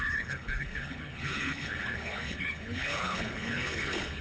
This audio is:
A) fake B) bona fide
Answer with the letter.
A